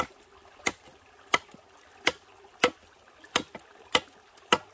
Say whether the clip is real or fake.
real